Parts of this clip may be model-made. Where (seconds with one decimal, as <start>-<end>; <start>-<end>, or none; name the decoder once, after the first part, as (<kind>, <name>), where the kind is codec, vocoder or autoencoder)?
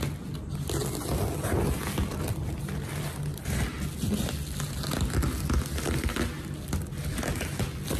none